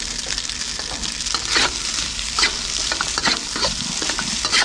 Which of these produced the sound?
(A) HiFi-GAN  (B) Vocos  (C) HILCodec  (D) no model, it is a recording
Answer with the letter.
D